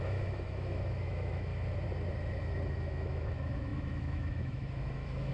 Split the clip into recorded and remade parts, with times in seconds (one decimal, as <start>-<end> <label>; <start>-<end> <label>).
0.0-1.5 remade; 1.5-2.8 recorded; 2.8-5.3 remade